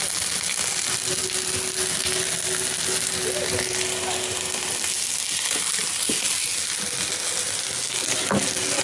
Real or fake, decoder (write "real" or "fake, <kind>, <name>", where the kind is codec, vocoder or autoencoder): real